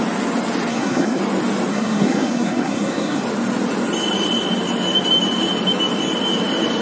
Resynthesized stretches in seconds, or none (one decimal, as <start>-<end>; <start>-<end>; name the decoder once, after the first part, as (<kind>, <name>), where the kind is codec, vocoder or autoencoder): 0.7-1.2 (codec, SNAC); 1.7-3.2